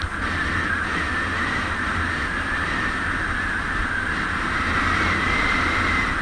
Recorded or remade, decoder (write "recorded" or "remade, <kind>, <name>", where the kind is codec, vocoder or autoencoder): recorded